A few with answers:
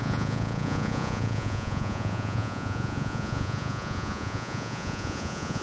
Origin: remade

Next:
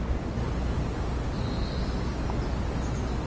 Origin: recorded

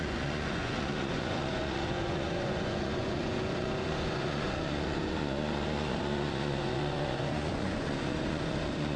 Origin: remade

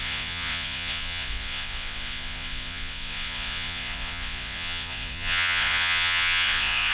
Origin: remade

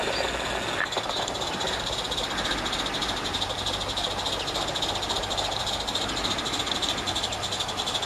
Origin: recorded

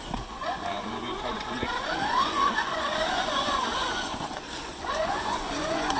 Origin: remade